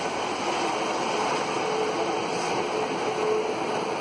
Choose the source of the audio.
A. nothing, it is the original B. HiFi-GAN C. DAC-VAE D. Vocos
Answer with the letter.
A